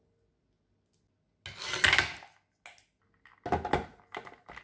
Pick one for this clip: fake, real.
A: real